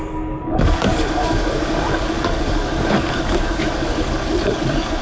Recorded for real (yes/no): no